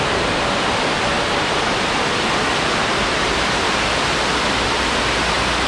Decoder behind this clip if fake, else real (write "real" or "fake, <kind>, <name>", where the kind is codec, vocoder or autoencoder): real